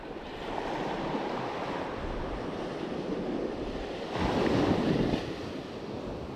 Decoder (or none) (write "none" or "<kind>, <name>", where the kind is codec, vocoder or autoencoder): none